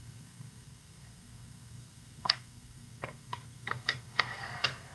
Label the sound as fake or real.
fake